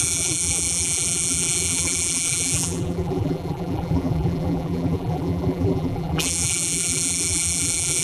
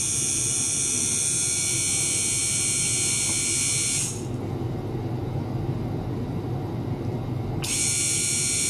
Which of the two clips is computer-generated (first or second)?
first